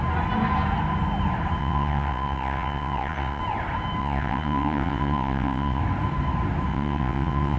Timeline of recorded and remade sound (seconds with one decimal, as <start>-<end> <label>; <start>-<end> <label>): 0.0-1.6 recorded; 1.6-3.4 remade; 3.4-4.0 recorded; 4.0-5.8 remade; 5.8-6.7 recorded; 6.7-7.6 remade